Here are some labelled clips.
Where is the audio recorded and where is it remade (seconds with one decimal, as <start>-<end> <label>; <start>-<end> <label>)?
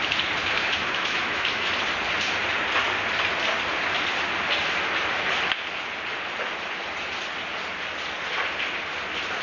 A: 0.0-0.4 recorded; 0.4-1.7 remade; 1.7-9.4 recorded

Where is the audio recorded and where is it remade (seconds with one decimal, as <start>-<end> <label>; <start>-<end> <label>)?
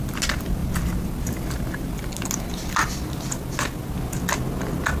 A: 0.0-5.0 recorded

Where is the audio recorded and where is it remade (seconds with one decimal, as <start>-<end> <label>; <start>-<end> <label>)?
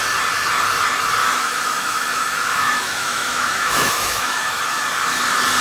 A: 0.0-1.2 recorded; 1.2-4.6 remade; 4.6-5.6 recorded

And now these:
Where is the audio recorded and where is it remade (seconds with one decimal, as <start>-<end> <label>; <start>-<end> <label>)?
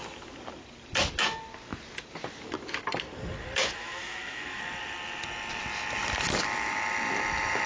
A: 0.0-3.6 recorded; 3.6-4.6 remade; 4.6-7.7 recorded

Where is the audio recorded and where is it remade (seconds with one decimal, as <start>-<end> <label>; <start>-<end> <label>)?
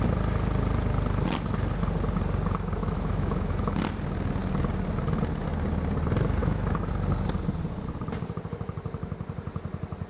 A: 0.0-2.8 recorded; 2.8-3.8 remade; 3.8-6.4 recorded; 6.4-6.9 remade; 6.9-10.1 recorded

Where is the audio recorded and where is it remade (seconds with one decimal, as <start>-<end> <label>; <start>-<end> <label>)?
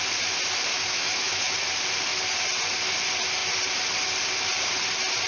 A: 0.0-0.7 recorded; 0.7-1.5 remade; 1.5-5.3 recorded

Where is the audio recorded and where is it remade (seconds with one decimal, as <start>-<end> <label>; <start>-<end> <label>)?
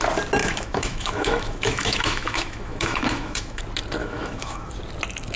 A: 0.0-0.4 recorded; 0.4-3.6 remade; 3.6-4.0 recorded; 4.0-4.7 remade; 4.7-5.4 recorded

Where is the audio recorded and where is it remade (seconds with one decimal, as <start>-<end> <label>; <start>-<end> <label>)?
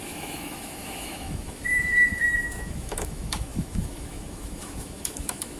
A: 0.0-5.6 remade